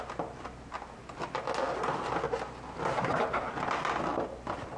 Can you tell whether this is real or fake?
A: real